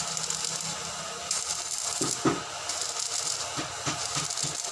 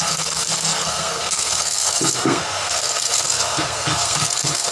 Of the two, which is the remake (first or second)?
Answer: second